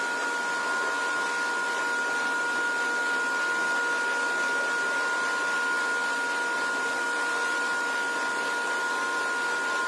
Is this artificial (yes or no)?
no